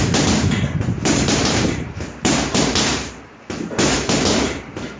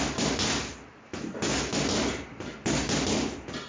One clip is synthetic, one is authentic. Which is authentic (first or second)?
second